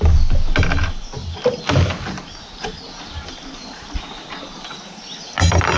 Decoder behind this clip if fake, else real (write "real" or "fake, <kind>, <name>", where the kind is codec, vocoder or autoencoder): real